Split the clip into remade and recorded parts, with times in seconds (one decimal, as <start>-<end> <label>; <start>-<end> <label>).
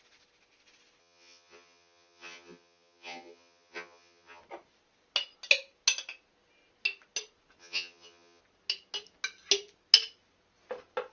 0.0-1.0 recorded; 1.0-4.4 remade; 4.4-7.6 recorded; 7.6-8.4 remade; 8.4-11.1 recorded